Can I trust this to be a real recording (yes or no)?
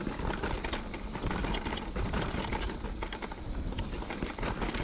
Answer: yes